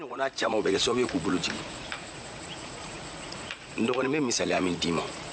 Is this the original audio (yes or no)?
no